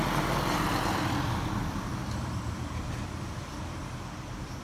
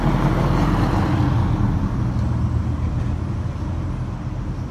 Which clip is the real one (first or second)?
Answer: second